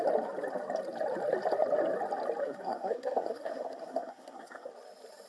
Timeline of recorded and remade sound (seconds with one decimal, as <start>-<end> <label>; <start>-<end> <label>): 0.0-2.4 recorded; 2.4-4.7 remade; 4.7-5.3 recorded